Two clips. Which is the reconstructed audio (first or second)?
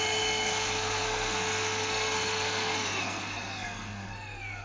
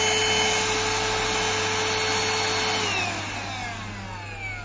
first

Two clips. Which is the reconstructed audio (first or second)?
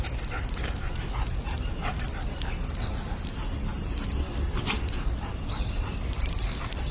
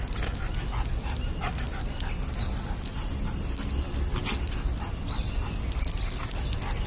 first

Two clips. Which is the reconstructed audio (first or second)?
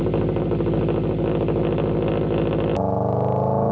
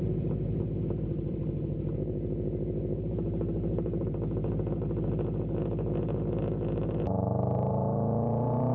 second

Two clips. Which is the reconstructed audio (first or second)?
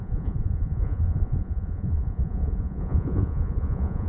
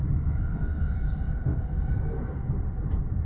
first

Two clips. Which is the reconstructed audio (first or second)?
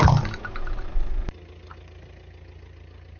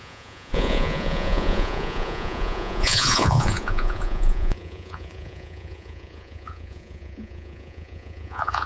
second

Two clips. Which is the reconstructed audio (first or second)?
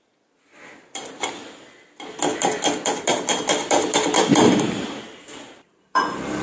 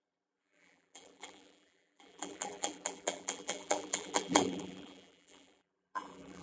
second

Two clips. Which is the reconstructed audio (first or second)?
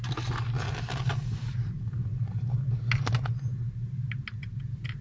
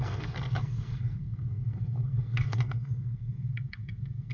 second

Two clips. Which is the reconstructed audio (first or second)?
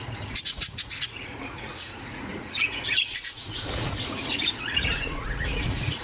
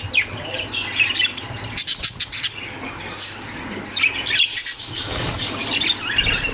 first